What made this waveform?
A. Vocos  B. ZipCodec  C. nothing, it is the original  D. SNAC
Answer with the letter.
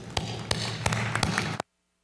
C